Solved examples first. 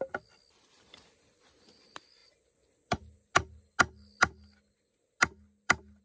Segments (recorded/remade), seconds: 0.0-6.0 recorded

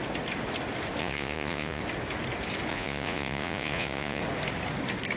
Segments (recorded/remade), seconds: 0.0-1.0 recorded; 1.0-1.8 remade; 1.8-2.7 recorded; 2.7-4.2 remade; 4.2-5.2 recorded

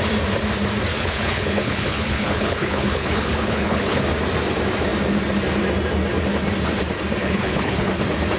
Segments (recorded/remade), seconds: 0.0-0.9 recorded; 0.9-4.0 remade; 4.0-7.2 recorded; 7.2-7.9 remade; 7.9-8.4 recorded

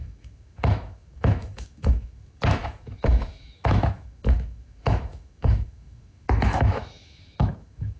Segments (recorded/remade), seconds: 0.0-8.0 remade

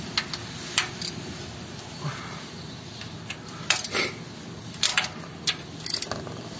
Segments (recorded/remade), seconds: 0.0-0.4 recorded; 0.4-3.9 remade; 3.9-4.9 recorded; 4.9-5.6 remade; 5.6-6.6 recorded

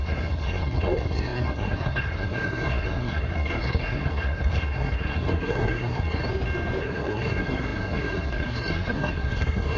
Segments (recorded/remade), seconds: 0.0-6.2 remade; 6.2-6.8 recorded; 6.8-9.8 remade

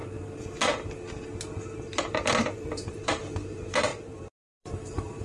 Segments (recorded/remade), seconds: 0.0-2.0 recorded; 2.0-5.2 remade